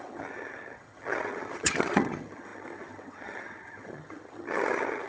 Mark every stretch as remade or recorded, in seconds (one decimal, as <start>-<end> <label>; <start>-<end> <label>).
0.0-5.1 remade